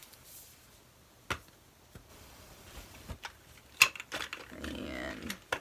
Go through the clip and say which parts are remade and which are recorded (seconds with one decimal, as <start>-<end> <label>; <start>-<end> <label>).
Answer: 0.0-0.7 remade; 0.7-2.1 recorded; 2.1-3.1 remade; 3.1-5.6 recorded